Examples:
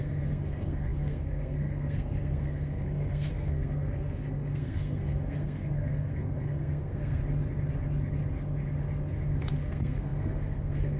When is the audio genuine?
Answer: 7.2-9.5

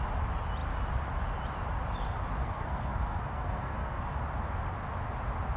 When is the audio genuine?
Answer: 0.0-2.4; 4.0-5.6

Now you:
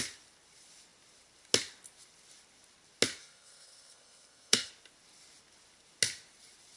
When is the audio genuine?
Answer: 0.0-3.2; 4.7-6.8

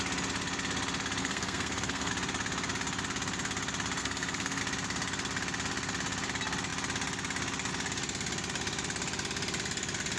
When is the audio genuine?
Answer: 0.0-1.2; 2.1-4.0; 4.6-10.2

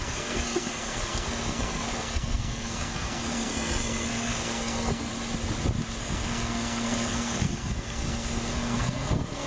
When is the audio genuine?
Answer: 5.1-6.0